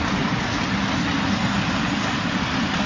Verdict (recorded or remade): recorded